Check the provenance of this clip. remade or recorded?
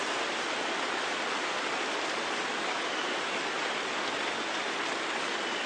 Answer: remade